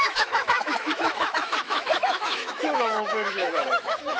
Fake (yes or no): yes